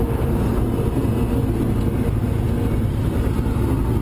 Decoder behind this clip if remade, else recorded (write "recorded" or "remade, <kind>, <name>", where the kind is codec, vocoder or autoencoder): recorded